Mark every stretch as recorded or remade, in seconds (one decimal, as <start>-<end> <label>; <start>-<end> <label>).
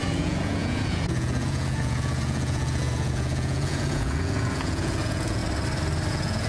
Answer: 0.0-5.4 remade; 5.4-6.1 recorded; 6.1-6.5 remade